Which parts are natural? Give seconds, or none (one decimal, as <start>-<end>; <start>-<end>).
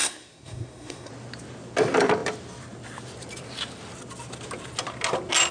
1.1-5.5